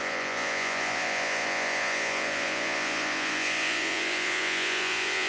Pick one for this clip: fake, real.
fake